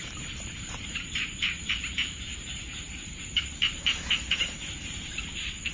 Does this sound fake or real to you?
fake